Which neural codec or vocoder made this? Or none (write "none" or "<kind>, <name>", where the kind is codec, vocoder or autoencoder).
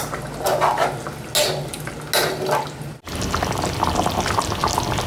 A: none